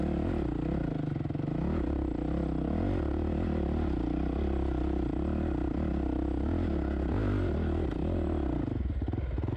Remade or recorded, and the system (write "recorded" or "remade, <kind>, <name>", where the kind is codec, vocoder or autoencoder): recorded